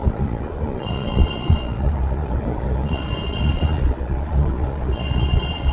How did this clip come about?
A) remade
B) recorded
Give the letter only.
A